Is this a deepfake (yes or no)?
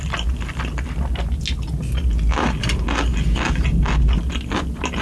no